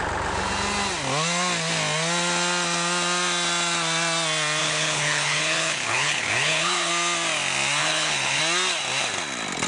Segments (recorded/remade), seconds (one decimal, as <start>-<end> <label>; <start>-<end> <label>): 0.0-4.6 recorded; 4.6-6.9 remade; 6.9-7.8 recorded; 7.8-8.4 remade; 8.4-9.7 recorded